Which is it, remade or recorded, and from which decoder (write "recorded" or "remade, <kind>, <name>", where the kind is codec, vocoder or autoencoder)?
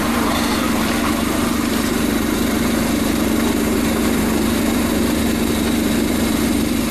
remade, vocoder, BigVGAN v2